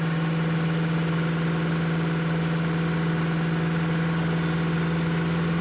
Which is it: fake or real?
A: real